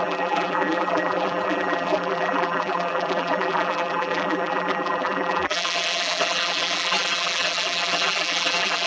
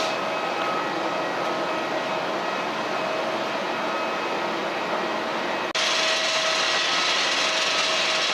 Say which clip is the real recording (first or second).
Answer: second